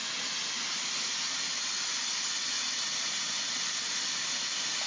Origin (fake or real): real